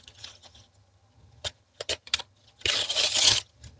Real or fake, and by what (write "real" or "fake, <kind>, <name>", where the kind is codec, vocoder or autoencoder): fake, vocoder, HiFi-GAN